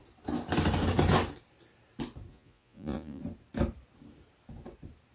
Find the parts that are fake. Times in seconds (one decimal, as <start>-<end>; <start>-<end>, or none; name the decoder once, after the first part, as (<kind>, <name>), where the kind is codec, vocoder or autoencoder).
2.3-3.2 (vocoder, Vocos)